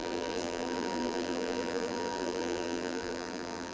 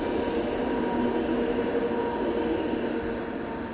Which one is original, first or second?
second